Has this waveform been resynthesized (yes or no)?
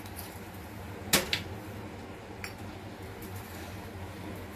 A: no